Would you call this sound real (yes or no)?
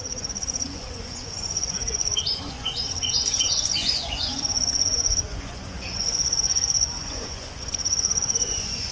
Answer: no